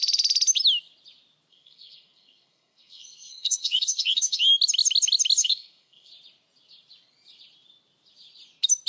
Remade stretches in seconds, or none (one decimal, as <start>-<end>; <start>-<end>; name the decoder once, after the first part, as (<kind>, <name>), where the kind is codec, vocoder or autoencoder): 1.5-4.4 (codec, SNAC); 5.4-6.1